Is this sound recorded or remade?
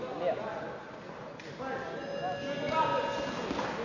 recorded